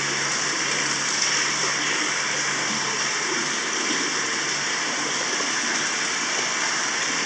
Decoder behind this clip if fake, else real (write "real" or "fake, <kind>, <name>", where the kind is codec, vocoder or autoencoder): real